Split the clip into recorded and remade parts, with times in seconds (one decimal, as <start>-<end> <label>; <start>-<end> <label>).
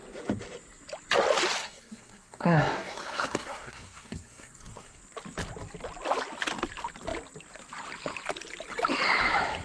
0.0-1.6 recorded; 1.6-5.0 remade; 5.0-9.6 recorded